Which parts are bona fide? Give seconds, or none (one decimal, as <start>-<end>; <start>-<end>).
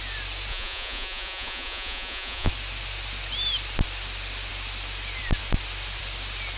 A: 0.0-0.5; 2.5-6.6